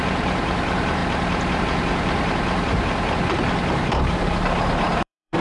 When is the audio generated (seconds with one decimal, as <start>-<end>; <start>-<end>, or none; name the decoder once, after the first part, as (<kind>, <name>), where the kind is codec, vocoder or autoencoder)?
0.0-1.0 (vocoder, BigVGAN v2); 1.6-5.4